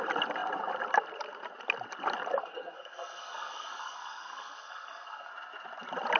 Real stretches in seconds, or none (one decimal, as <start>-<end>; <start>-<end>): 0.0-2.4; 5.3-6.2